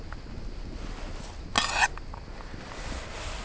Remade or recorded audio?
recorded